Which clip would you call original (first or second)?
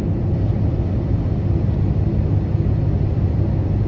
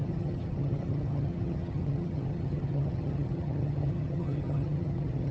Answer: first